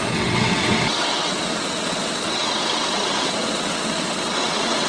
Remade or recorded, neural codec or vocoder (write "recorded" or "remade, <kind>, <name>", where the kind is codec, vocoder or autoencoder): remade, vocoder, WaveNeXt